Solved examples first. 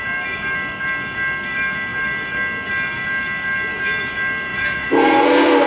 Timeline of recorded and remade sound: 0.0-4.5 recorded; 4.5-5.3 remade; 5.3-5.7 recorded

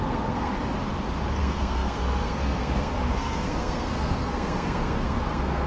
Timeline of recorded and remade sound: 0.0-0.5 remade; 0.5-1.4 recorded; 1.4-5.7 remade

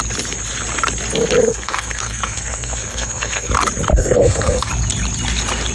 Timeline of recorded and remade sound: 0.0-1.5 recorded; 1.5-3.5 remade; 3.5-3.9 recorded; 3.9-4.7 remade; 4.7-5.7 recorded

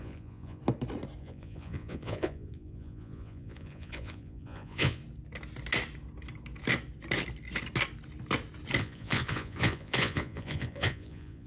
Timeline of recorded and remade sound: 0.0-0.6 remade; 0.6-1.2 recorded; 1.2-5.0 remade; 5.0-8.8 recorded; 8.8-11.5 remade

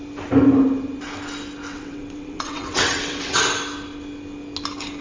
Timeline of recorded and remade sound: 0.0-1.7 recorded; 1.7-3.4 remade; 3.4-5.0 recorded

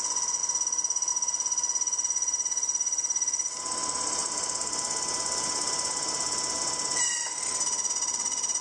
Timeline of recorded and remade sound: 0.0-8.6 recorded

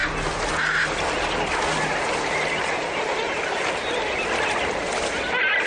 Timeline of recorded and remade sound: 0.0-5.7 recorded

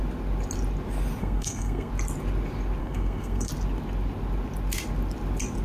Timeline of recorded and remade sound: 0.0-1.2 recorded; 1.2-1.9 remade; 1.9-2.8 recorded; 2.8-3.5 remade; 3.5-5.6 recorded